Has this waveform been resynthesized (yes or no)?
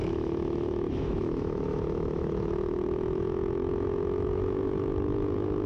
yes